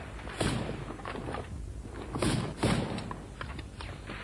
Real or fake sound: real